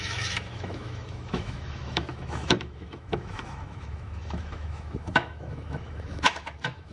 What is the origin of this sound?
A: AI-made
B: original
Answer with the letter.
A